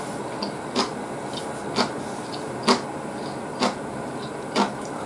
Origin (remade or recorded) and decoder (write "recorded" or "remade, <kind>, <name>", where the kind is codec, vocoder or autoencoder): recorded